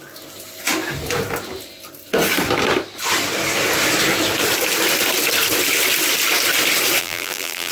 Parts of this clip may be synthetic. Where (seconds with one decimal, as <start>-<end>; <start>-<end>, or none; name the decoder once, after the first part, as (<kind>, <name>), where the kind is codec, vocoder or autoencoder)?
7.0-7.7 (vocoder, BigVGAN v2)